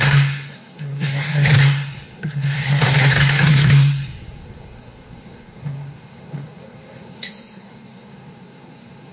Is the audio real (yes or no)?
no